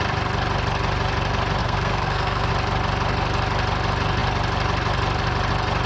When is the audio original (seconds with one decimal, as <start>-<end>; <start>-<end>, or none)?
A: 0.0-1.6; 2.5-5.9